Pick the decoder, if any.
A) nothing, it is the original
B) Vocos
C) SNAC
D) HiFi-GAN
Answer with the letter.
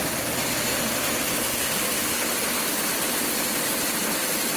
A